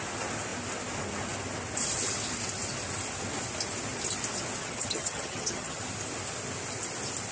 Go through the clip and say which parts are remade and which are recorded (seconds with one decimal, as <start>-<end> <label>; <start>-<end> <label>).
0.0-4.6 recorded; 4.6-5.8 remade; 5.8-7.3 recorded